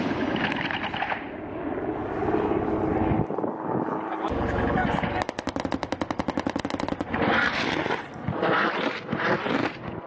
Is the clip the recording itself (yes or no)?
yes